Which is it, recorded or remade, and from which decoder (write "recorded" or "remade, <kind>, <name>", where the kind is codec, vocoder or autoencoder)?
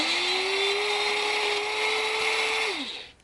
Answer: recorded